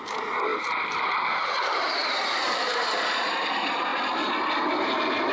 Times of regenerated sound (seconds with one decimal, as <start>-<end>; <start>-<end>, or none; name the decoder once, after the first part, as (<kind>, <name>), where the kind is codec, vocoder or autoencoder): 0.0-3.9 (vocoder, BigVGAN v2)

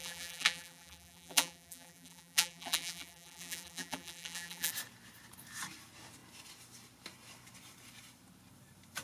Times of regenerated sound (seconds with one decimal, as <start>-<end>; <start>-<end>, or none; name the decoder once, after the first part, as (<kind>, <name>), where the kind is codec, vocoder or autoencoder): 0.0-4.7 (vocoder, BigVGAN v2)

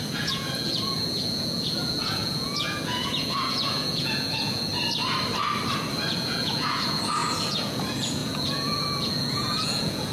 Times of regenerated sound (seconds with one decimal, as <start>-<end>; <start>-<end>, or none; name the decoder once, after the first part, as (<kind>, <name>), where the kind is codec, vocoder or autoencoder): 0.0-4.7 (vocoder, Vocos); 6.1-10.1

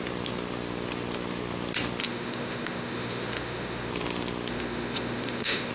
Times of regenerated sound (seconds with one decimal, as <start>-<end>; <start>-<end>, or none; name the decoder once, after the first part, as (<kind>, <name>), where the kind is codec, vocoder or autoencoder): 2.0-3.9 (autoencoder, DAC-VAE); 4.5-5.7

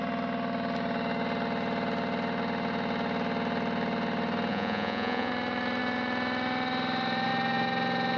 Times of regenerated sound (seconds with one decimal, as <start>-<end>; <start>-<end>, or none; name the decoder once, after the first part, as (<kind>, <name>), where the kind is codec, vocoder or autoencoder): 4.5-5.3 (vocoder, Vocos)